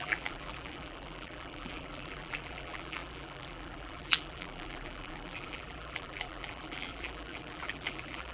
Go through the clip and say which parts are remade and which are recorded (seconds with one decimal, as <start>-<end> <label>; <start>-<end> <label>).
0.0-8.3 remade